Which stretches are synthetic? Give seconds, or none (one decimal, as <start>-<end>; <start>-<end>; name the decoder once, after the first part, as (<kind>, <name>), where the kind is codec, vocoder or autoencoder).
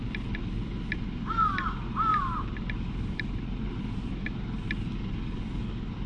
none